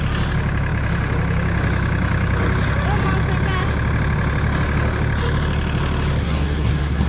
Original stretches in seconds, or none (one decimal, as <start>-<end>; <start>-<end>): 0.0-6.2